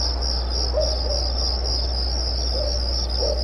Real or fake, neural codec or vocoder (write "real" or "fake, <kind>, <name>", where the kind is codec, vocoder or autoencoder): real